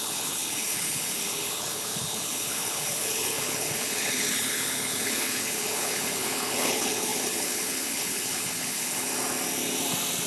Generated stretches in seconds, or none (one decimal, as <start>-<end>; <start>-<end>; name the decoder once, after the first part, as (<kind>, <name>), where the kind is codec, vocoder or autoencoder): 0.0-9.1 (codec, HILCodec)

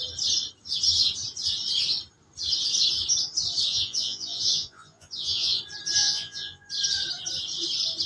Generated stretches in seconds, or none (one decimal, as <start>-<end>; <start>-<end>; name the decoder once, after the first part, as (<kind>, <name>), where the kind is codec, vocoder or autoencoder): 3.7-5.6 (vocoder, Vocos); 6.0-6.7

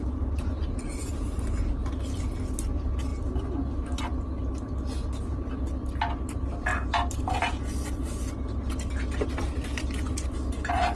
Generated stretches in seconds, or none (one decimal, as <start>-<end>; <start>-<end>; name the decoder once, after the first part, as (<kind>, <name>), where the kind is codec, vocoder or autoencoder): none

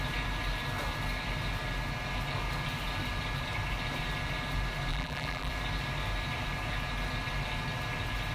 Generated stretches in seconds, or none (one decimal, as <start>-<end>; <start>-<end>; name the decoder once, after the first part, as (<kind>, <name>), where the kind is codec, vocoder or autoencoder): 4.9-5.5 (vocoder, BigVGAN v2)

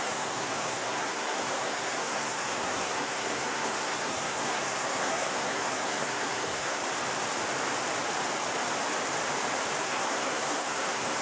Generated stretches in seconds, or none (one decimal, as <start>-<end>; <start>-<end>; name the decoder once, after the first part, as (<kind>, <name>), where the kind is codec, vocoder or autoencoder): 0.0-6.8 (codec, SNAC); 9.8-11.2